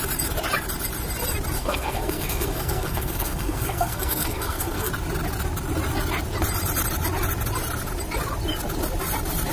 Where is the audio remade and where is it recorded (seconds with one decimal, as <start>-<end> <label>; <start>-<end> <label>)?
0.0-1.6 recorded; 1.6-4.9 remade; 4.9-9.5 recorded